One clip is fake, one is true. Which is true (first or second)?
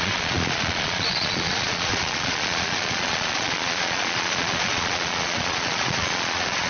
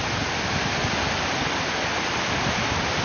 second